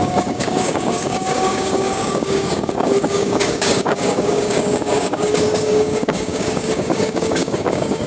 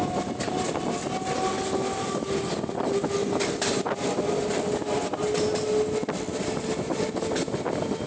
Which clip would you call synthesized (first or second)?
first